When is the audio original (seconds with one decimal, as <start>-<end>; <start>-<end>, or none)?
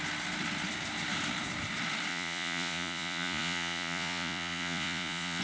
0.0-2.1